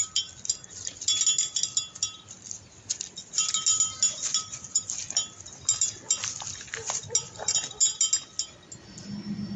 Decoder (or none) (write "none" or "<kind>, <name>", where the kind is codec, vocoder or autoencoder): none